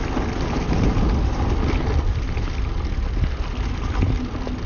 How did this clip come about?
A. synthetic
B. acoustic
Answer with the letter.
B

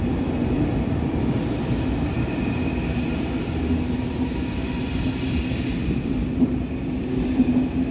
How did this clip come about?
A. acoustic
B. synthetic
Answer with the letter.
A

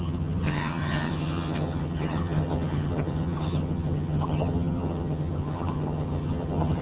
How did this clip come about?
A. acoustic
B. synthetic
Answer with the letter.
B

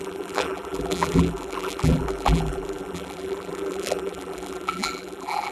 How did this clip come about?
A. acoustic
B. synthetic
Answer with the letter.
B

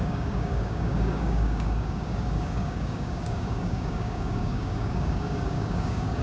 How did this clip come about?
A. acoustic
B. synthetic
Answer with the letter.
B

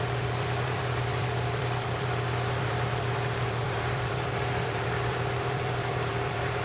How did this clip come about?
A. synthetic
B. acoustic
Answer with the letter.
A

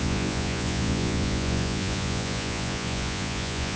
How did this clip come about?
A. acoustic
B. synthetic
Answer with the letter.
B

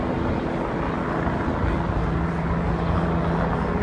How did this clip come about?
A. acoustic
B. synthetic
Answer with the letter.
A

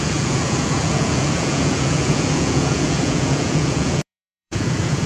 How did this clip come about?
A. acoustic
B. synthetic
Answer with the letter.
B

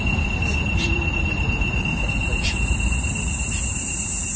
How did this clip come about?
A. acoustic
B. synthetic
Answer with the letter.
B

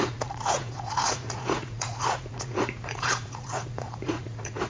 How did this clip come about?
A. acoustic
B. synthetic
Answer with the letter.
B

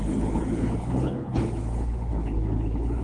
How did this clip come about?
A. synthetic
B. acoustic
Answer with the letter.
A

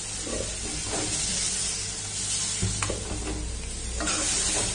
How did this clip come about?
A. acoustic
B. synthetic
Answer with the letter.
A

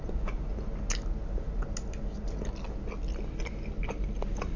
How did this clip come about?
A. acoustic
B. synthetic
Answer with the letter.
A